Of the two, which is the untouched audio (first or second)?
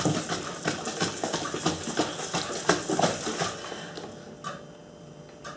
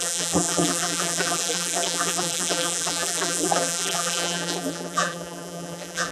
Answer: first